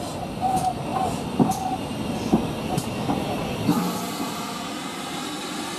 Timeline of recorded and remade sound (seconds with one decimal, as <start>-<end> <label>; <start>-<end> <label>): 0.0-5.8 recorded